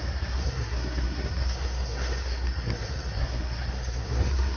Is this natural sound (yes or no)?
no